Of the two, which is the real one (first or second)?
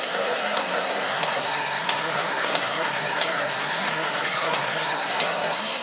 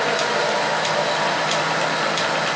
second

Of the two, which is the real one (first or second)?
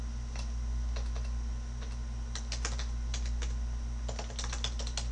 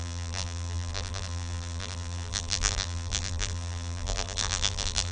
first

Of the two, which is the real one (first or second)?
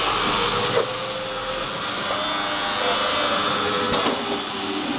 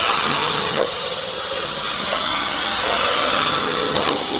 first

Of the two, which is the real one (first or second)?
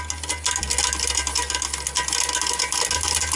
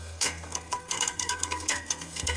first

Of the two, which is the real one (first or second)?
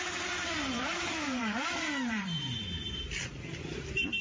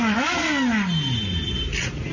second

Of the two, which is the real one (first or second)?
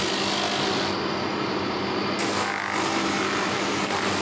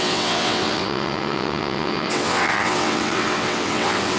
first